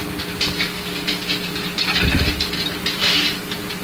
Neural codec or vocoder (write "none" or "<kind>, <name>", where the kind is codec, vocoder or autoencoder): none